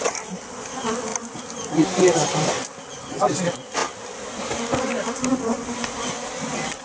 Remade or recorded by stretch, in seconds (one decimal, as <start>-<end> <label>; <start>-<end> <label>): 0.0-6.8 recorded